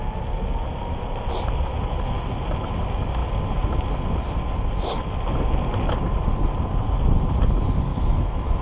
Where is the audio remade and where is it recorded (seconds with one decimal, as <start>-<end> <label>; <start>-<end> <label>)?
0.0-7.9 recorded; 7.9-8.6 remade